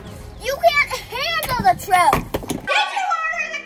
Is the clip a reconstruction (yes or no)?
no